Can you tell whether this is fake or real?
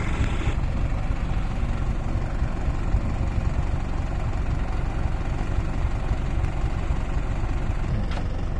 real